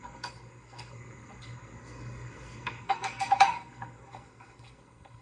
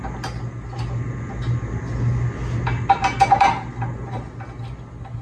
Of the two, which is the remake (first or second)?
first